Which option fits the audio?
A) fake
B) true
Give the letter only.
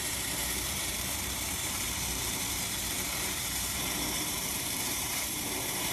A